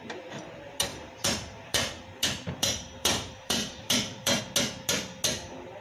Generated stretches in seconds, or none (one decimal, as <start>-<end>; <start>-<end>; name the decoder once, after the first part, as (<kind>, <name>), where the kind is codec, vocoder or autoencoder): 0.9-4.4 (vocoder, BigVGAN v2)